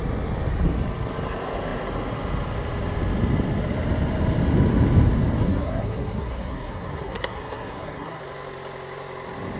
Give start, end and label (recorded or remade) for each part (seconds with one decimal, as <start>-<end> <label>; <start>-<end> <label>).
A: 0.0-5.5 recorded; 5.5-8.2 remade; 8.2-9.6 recorded